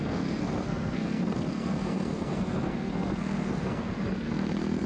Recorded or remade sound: remade